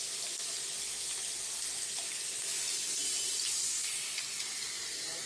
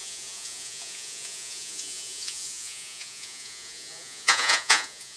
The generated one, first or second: second